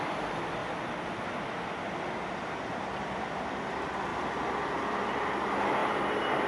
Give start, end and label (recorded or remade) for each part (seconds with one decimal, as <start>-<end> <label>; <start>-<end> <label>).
0.0-6.5 recorded